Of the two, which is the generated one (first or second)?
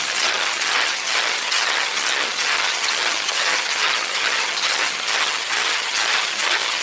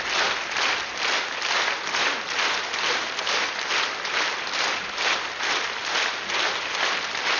first